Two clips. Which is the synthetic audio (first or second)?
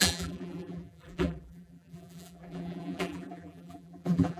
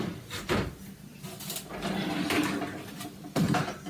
first